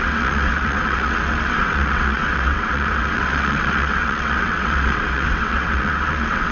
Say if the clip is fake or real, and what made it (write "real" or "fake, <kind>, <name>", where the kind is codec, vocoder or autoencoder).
fake, vocoder, WaveNeXt